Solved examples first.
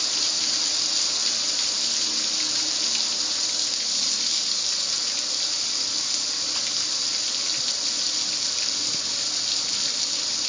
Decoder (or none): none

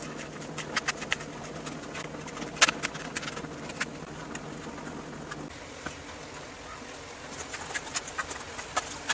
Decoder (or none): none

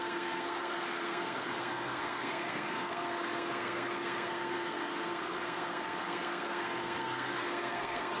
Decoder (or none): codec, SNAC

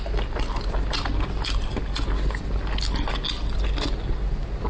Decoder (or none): none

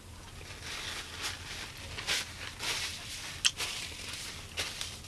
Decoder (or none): none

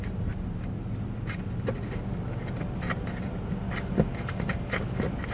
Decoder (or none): none